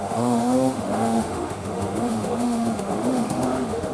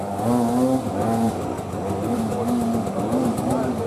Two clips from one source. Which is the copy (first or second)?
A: first